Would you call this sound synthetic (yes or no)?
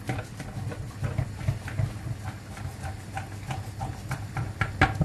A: no